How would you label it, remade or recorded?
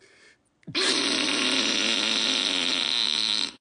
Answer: recorded